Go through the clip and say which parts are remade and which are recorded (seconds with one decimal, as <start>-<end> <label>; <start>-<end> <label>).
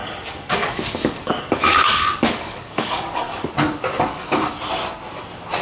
0.0-3.4 remade; 3.4-3.9 recorded; 3.9-4.5 remade; 4.5-5.6 recorded